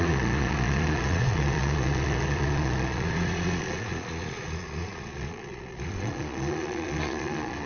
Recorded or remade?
remade